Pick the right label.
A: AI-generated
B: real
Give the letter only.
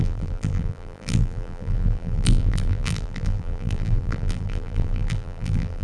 A